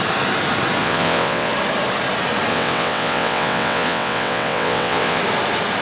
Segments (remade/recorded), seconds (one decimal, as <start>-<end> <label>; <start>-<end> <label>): 0.0-0.8 recorded; 0.8-1.5 remade; 1.5-2.5 recorded; 2.5-5.2 remade; 5.2-5.8 recorded